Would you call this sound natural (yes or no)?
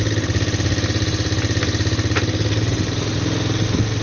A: yes